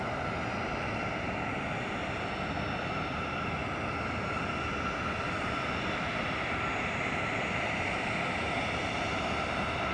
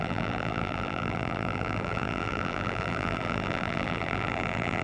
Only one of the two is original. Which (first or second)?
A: first